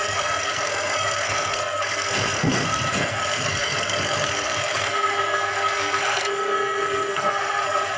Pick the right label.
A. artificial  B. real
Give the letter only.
A